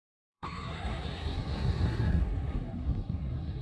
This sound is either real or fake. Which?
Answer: fake